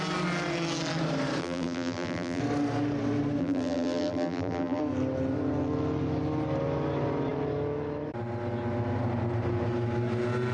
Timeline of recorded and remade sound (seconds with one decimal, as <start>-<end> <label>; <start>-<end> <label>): 0.0-1.4 recorded; 1.4-2.4 remade; 2.4-3.4 recorded; 3.4-4.8 remade; 4.8-10.5 recorded